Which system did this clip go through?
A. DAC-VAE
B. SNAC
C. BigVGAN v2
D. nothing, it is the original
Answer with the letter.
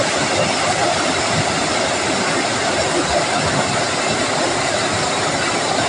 D